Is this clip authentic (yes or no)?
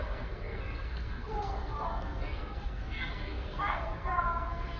no